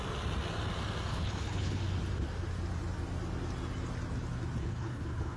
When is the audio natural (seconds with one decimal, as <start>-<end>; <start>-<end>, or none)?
0.0-1.1; 1.8-4.6